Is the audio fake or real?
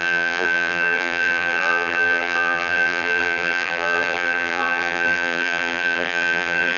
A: fake